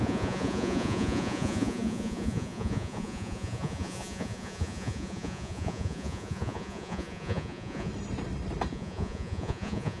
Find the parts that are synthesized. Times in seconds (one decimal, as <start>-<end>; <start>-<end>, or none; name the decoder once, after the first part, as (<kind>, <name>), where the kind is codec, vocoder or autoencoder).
0.0-7.9 (vocoder, Vocos); 8.7-10.0